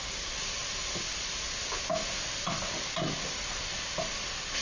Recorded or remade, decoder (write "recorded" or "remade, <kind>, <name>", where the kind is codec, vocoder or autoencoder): recorded